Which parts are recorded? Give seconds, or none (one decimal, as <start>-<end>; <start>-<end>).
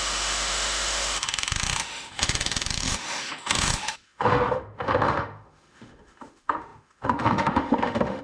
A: none